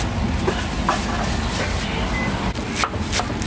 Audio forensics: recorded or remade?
recorded